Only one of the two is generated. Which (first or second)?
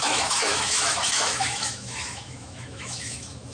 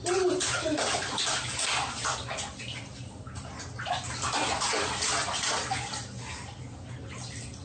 first